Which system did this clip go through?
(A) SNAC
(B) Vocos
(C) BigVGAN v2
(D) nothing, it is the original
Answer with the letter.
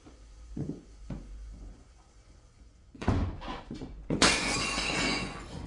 B